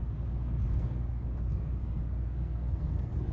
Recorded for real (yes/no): no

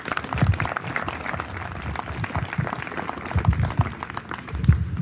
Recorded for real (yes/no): yes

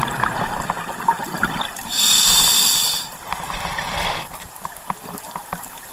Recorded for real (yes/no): no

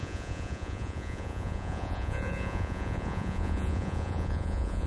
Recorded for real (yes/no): no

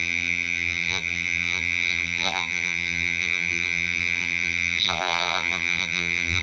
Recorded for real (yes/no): no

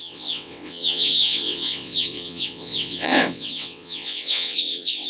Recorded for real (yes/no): no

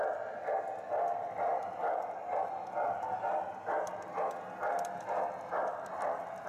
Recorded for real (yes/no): yes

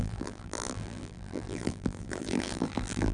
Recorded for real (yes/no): no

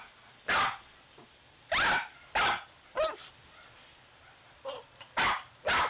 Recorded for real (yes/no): yes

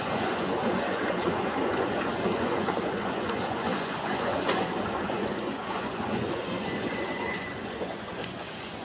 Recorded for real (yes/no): no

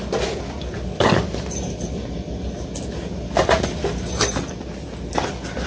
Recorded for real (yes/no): yes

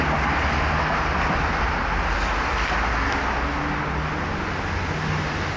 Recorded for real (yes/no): yes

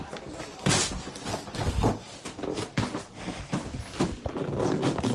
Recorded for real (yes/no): yes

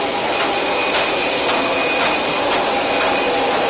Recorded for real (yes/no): yes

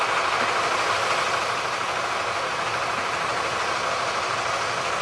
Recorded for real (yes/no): yes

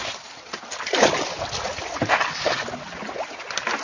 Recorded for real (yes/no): yes